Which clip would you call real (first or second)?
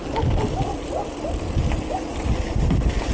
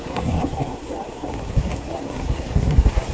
first